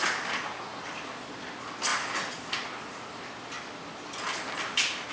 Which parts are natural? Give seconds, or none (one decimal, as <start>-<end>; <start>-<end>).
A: 0.0-0.7; 1.3-5.1